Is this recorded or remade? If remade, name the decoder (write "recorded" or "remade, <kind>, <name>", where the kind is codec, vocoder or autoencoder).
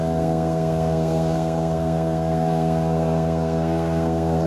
remade, codec, SNAC